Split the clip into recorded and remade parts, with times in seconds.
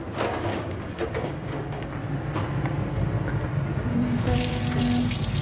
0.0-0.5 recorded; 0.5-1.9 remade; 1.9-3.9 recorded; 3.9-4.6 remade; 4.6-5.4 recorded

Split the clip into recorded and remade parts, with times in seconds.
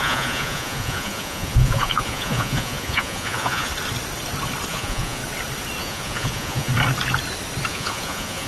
0.0-3.7 remade; 3.7-4.7 recorded; 4.7-5.2 remade; 5.2-5.8 recorded; 5.8-6.7 remade; 6.7-7.7 recorded; 7.7-8.5 remade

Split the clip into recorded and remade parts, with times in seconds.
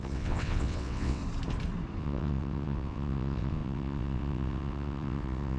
0.0-1.2 remade; 1.2-2.0 recorded; 2.0-5.6 remade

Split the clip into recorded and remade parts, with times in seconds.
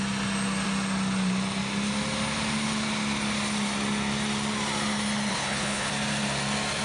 0.0-5.3 recorded; 5.3-5.9 remade; 5.9-6.8 recorded